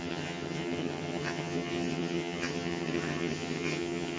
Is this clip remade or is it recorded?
remade